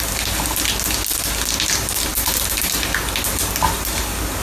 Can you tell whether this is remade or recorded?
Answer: recorded